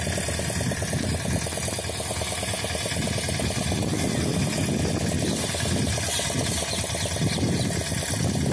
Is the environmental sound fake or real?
real